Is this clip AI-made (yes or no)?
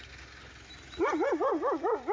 no